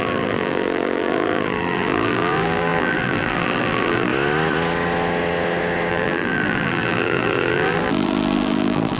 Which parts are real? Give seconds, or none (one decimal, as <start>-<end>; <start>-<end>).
4.1-5.9